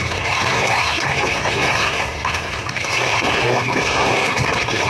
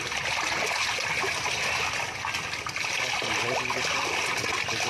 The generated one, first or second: first